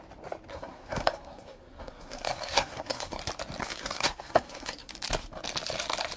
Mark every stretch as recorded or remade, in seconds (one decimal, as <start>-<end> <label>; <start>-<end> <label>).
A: 0.0-0.5 recorded; 0.5-3.2 remade; 3.2-3.6 recorded; 3.6-4.9 remade; 4.9-6.2 recorded